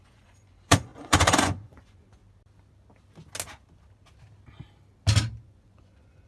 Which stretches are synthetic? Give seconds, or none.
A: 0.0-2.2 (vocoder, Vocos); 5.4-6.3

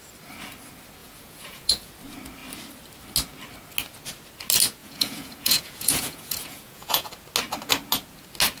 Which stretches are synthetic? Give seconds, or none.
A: 1.0-1.9 (vocoder, Vocos); 4.8-7.1

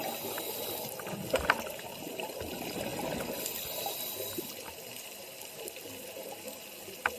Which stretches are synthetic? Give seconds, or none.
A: none

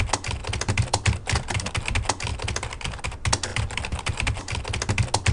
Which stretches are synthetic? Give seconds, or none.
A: 0.4-1.7 (vocoder, BigVGAN v2); 2.3-3.0; 3.5-4.4

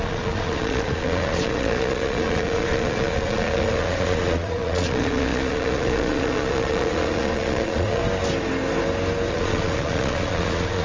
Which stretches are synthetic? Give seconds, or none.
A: 0.0-8.0 (vocoder, Vocos); 9.3-10.8

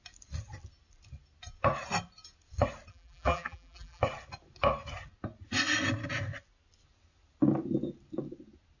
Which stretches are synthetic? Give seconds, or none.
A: 2.9-4.0 (vocoder, BigVGAN v2)